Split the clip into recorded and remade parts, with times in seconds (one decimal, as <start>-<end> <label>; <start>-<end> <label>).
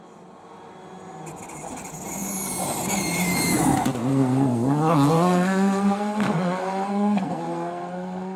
0.0-4.1 recorded; 4.1-8.4 remade